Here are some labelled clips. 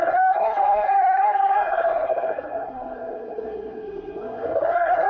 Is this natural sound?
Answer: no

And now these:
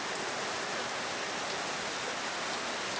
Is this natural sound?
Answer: yes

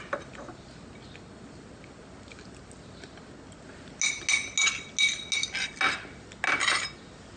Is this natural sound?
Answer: yes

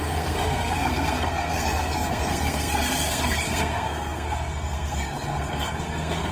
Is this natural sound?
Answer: no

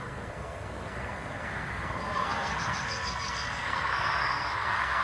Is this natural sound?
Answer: no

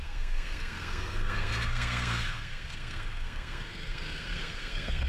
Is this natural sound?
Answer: no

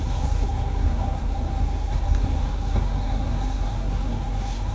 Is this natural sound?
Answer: no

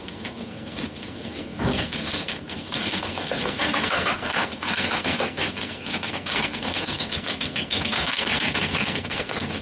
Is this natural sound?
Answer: no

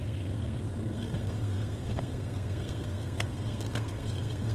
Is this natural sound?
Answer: no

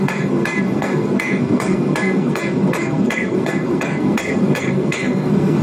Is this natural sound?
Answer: no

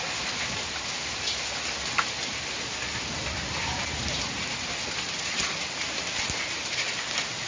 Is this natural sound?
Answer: yes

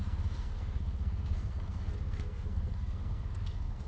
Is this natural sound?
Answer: no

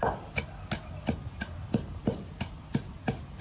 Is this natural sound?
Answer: yes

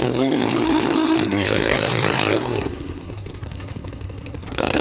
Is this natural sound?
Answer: no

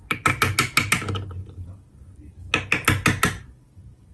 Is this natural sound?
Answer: yes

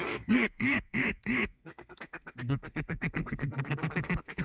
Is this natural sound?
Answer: no